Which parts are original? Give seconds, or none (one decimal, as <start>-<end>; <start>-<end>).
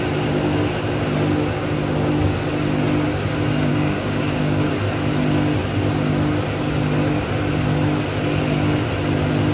0.0-3.7; 4.7-9.5